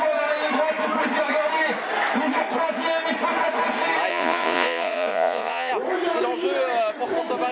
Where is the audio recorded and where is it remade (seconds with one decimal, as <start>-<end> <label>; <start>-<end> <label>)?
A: 0.0-4.1 recorded; 4.1-5.7 remade; 5.7-7.5 recorded